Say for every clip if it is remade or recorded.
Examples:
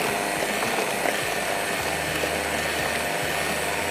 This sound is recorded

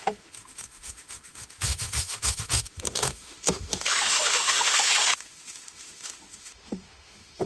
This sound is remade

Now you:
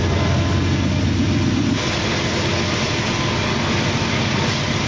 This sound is recorded